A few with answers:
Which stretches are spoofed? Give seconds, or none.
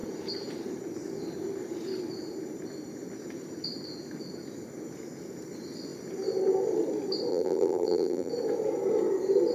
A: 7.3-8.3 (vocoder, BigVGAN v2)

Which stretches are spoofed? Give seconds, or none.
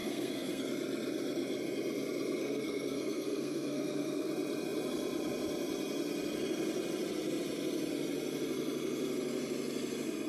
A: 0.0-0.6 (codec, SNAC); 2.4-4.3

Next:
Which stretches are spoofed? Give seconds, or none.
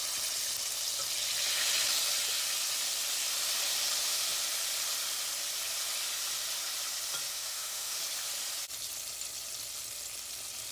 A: 7.3-8.0 (autoencoder, DAC-VAE)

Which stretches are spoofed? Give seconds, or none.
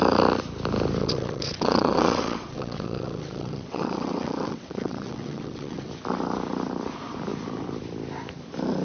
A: 1.0-5.9 (vocoder, WaveNeXt)